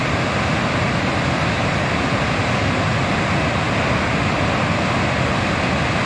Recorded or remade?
recorded